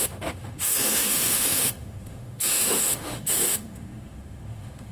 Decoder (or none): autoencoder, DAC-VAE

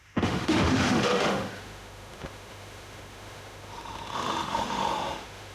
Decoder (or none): autoencoder, DAC-VAE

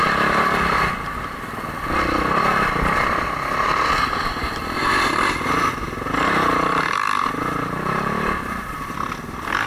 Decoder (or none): none